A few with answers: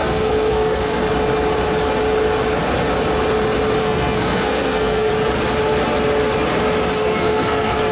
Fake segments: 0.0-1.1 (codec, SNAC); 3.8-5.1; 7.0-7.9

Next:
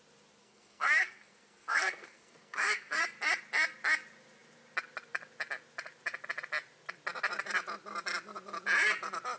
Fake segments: 0.4-3.0 (codec, SNAC)

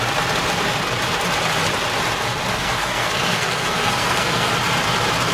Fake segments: 2.5-4.5 (codec, SNAC)

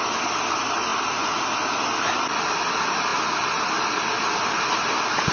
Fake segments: none

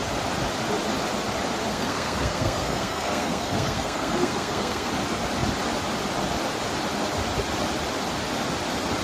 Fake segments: 1.7-4.9 (codec, SNAC)